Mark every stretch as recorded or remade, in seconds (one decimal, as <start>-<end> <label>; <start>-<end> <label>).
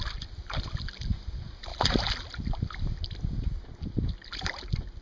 0.0-5.0 recorded